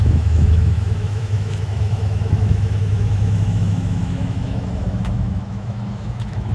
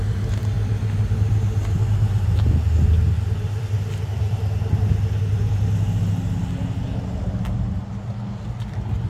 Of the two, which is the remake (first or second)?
first